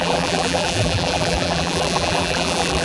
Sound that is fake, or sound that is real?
fake